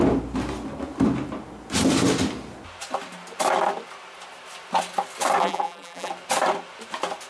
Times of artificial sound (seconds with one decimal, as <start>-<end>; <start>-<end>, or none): 5.4-6.1